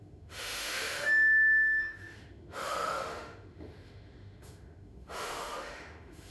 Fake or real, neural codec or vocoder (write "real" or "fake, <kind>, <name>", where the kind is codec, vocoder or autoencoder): fake, autoencoder, DAC-VAE